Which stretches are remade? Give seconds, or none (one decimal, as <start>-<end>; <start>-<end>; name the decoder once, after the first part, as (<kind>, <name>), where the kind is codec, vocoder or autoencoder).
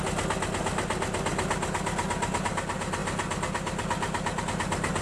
none